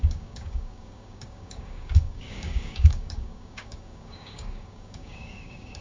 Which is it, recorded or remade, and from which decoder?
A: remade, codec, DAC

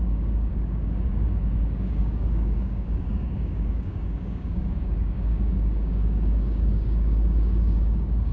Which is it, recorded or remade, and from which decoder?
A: remade, codec, DAC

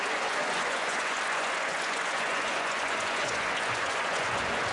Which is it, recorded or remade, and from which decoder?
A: remade, vocoder, Vocos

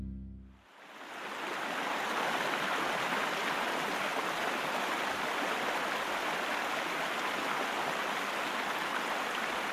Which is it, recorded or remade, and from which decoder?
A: recorded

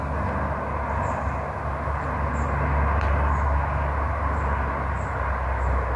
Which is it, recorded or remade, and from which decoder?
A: recorded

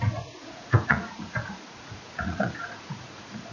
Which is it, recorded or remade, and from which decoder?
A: remade, vocoder, Vocos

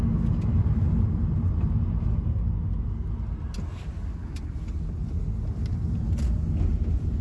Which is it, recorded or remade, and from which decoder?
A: recorded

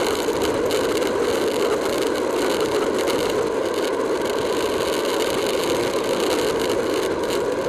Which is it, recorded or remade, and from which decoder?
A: recorded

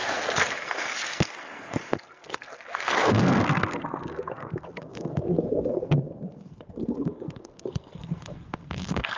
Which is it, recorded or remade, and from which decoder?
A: remade, codec, SNAC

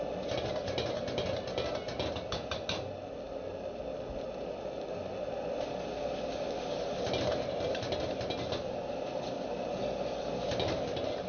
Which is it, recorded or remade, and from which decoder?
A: recorded